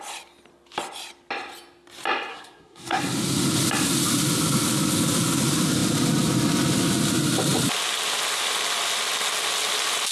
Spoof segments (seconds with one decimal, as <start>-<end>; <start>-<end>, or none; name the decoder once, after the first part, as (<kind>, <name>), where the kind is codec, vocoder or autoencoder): 2.3-3.0 (codec, SNAC)